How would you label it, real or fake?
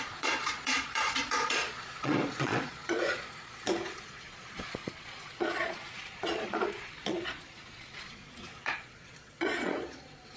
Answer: fake